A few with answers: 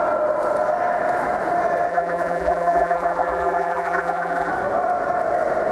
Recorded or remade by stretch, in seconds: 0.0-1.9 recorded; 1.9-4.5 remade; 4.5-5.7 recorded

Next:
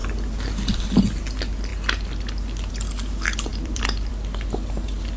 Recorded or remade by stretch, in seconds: 0.0-3.5 recorded; 3.5-4.1 remade; 4.1-5.2 recorded

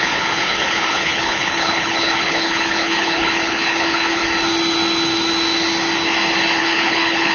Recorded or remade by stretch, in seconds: 0.0-4.2 remade; 4.2-6.6 recorded; 6.6-7.3 remade